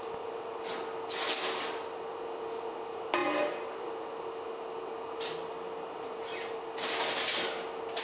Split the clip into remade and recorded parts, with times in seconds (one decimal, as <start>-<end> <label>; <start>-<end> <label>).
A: 0.0-8.0 recorded

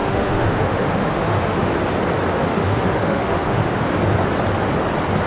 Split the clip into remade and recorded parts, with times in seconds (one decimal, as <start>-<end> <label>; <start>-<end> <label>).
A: 0.0-1.7 remade; 1.7-2.3 recorded; 2.3-3.9 remade; 3.9-5.3 recorded

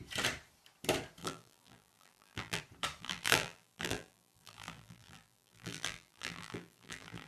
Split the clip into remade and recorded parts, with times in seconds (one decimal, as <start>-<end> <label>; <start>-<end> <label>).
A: 0.0-1.2 recorded; 1.2-2.6 remade; 2.6-3.0 recorded; 3.0-7.3 remade

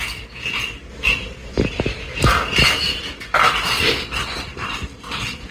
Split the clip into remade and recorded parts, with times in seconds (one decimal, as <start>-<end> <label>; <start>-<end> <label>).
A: 0.0-5.5 recorded

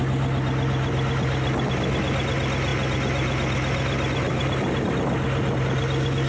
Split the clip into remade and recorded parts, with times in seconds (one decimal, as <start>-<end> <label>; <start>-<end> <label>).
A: 0.0-6.3 recorded

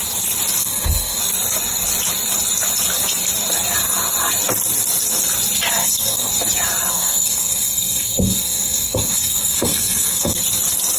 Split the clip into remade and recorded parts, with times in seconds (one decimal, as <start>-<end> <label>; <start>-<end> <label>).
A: 0.0-0.6 recorded; 0.6-1.2 remade; 1.2-5.8 recorded; 5.8-6.3 remade; 6.3-6.9 recorded; 6.9-10.4 remade; 10.4-11.0 recorded

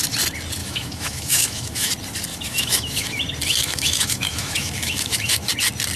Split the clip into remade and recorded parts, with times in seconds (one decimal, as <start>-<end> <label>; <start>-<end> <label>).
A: 0.0-0.6 recorded; 0.6-1.9 remade; 1.9-2.3 recorded; 2.3-3.2 remade; 3.2-3.6 recorded; 3.6-5.5 remade; 5.5-6.0 recorded